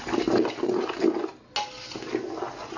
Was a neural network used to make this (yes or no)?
no